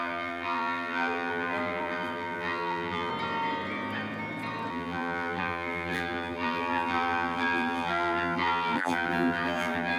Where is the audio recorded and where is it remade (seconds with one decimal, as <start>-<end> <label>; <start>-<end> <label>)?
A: 0.0-3.1 remade; 3.1-4.7 recorded; 4.7-10.0 remade